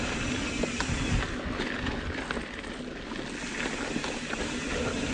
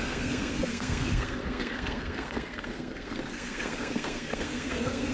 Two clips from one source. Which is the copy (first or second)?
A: second